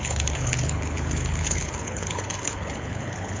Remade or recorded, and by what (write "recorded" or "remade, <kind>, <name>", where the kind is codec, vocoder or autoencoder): remade, codec, HILCodec